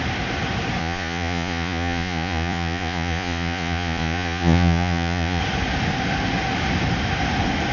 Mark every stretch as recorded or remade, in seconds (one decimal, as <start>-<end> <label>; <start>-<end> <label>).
0.0-0.8 recorded; 0.8-5.4 remade; 5.4-7.7 recorded